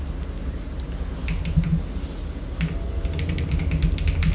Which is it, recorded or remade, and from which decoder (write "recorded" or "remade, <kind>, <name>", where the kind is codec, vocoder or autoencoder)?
recorded